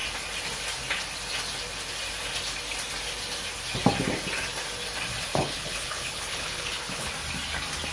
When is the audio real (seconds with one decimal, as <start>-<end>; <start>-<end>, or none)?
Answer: 0.0-5.3; 7.1-7.9